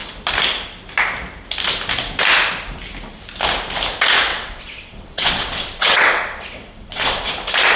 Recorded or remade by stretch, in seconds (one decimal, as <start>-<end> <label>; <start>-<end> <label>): 0.0-4.3 recorded; 4.3-7.3 remade; 7.3-7.8 recorded